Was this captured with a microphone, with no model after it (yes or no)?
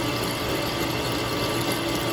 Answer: yes